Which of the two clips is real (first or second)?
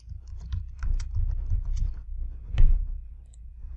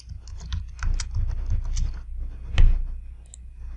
second